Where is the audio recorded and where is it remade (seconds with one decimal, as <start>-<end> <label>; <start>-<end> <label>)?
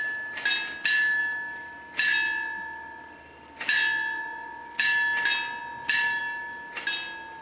0.0-7.4 recorded